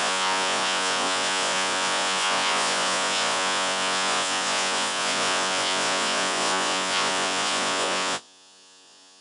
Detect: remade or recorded remade